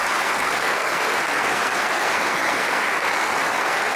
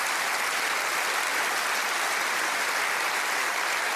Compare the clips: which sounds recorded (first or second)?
second